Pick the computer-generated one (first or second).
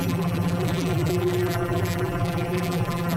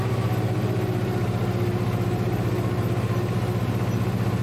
first